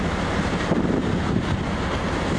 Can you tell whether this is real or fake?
real